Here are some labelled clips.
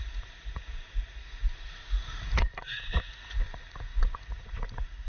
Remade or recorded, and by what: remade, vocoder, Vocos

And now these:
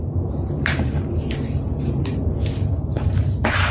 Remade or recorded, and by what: remade, vocoder, BigVGAN v2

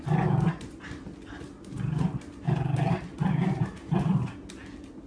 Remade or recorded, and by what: recorded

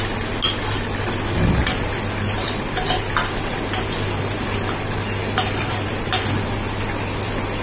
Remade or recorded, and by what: recorded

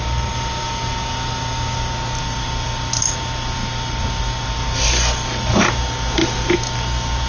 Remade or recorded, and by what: recorded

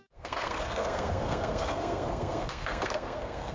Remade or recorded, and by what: remade, codec, SNAC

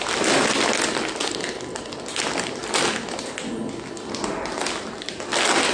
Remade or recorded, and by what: recorded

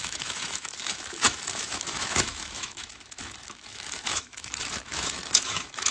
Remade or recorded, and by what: remade, autoencoder, DAC-VAE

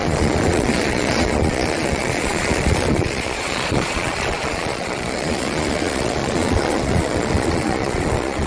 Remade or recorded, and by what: remade, vocoder, Vocos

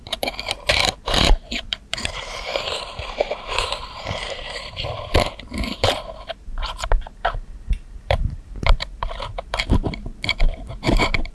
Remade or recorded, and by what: remade, vocoder, BigVGAN v2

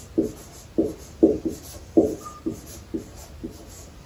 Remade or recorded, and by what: recorded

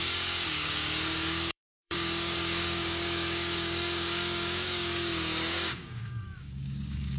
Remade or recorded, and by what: remade, codec, DAC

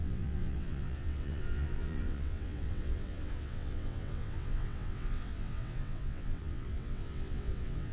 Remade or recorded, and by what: remade, vocoder, WaveNeXt